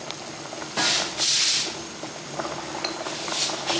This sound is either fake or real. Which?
real